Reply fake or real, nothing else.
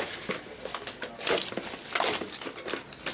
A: real